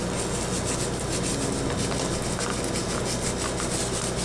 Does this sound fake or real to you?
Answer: real